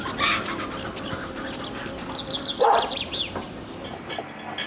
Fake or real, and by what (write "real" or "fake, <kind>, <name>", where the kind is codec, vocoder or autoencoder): real